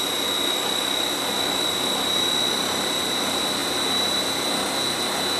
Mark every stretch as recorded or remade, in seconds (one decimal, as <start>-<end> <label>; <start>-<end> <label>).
0.0-5.4 recorded